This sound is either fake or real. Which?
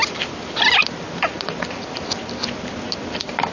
real